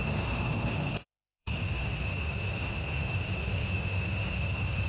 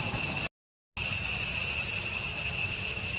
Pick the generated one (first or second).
first